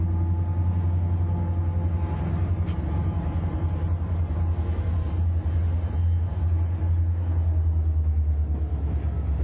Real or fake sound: real